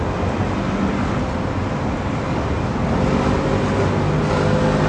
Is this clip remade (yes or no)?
no